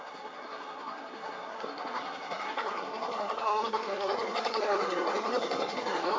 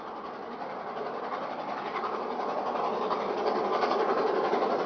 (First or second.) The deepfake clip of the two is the first